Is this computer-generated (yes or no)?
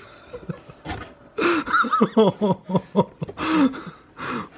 no